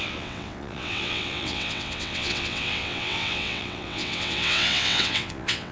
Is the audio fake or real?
fake